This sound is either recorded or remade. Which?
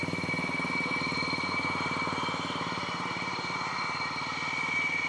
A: recorded